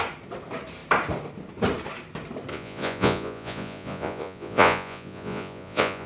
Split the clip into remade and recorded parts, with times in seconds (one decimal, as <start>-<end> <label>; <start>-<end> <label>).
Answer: 0.0-2.5 recorded; 2.5-6.1 remade